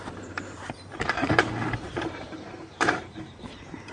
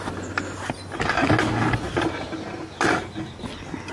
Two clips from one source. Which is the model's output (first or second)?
first